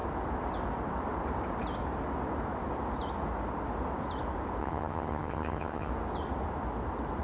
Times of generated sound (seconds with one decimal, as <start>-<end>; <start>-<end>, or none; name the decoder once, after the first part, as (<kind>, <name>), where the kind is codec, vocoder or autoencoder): 4.6-5.9 (vocoder, HiFi-GAN)